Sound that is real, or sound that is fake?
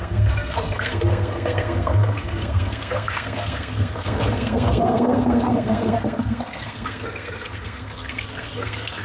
fake